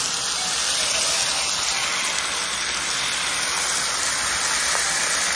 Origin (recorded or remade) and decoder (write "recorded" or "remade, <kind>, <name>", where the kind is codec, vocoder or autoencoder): recorded